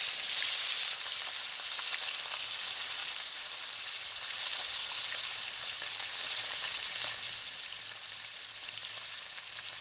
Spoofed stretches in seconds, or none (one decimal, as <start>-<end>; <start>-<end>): 3.0-4.1; 4.8-9.8